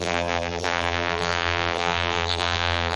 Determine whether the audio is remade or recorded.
remade